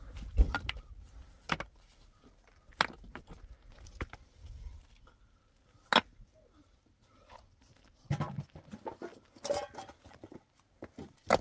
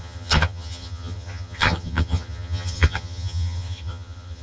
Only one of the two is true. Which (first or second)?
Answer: first